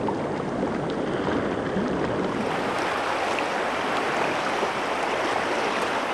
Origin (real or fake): real